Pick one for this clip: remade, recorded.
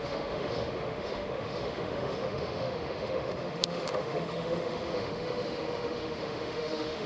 remade